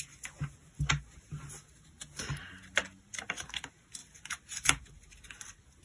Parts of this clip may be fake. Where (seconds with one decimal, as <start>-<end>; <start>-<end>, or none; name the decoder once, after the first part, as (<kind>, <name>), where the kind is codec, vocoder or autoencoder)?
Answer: none